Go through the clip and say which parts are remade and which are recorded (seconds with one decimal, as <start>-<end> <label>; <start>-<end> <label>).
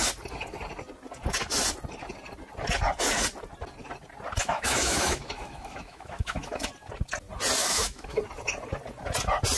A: 0.0-4.4 recorded; 4.4-6.7 remade; 6.7-7.6 recorded; 7.6-8.2 remade; 8.2-9.6 recorded